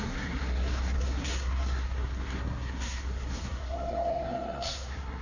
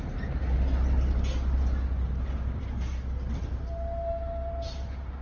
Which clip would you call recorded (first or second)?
second